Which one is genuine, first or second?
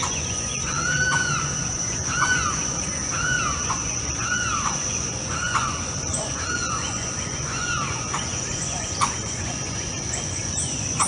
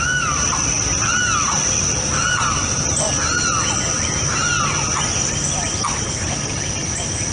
second